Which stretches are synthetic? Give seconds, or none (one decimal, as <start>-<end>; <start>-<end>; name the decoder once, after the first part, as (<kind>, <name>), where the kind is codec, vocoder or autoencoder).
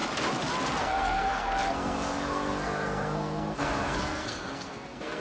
0.8-5.2 (codec, SNAC)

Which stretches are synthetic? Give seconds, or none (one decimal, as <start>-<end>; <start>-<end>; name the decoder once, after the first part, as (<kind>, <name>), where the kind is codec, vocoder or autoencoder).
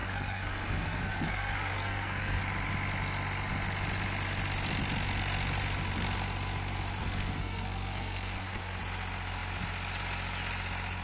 0.0-2.4 (codec, SNAC); 7.0-8.8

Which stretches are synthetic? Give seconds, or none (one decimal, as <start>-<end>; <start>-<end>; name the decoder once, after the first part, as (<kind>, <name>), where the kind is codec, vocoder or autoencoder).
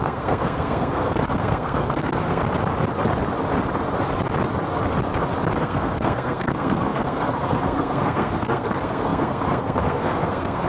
0.0-2.4 (codec, SNAC); 5.6-10.7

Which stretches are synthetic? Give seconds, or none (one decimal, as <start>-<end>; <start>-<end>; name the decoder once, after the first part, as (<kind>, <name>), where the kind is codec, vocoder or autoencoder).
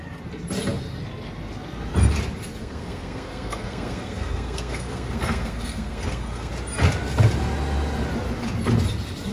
2.6-6.5 (codec, SNAC)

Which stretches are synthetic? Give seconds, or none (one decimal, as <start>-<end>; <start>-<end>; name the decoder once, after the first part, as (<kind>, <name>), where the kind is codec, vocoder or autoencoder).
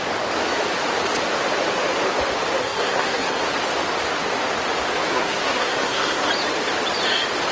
2.6-3.4 (codec, SNAC); 5.1-6.3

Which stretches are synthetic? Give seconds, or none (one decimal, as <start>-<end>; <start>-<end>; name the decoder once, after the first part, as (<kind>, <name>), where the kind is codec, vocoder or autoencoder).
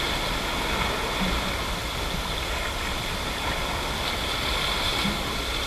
none